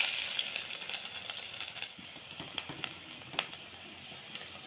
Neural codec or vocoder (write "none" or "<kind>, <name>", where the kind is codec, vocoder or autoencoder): none